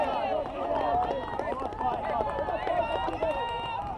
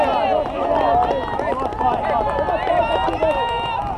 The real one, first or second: second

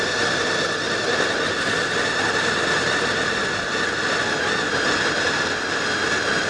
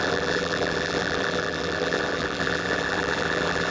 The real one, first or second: first